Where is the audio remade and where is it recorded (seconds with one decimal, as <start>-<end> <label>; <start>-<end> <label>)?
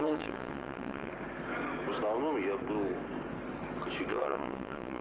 0.0-1.1 remade; 1.1-4.1 recorded; 4.1-5.0 remade